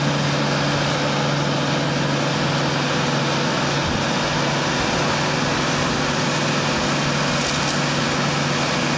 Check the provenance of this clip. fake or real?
real